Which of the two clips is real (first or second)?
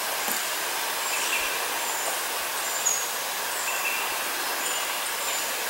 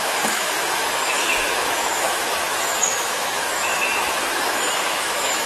first